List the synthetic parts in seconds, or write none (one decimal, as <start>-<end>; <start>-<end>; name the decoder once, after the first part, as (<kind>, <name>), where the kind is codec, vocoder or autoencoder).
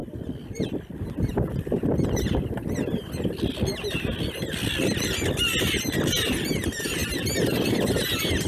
none